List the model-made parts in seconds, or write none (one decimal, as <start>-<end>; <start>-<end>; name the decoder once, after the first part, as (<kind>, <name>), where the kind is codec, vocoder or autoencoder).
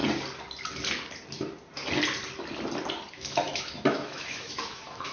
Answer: 3.1-5.1 (autoencoder, DAC-VAE)